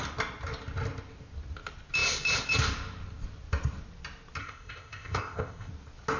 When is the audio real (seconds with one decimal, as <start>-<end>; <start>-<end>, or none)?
0.0-4.4; 5.7-6.2